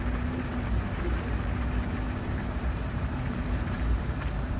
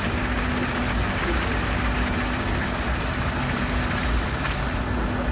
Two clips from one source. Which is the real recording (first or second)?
second